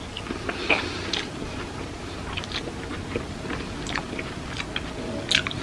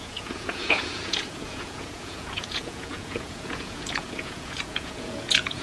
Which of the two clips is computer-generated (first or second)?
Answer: second